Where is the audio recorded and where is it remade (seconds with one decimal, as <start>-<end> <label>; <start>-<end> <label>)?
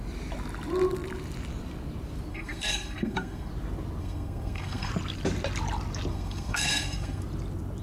0.0-2.3 recorded; 2.3-3.5 remade; 3.5-4.0 recorded; 4.0-4.9 remade; 4.9-6.1 recorded; 6.1-7.2 remade; 7.2-7.8 recorded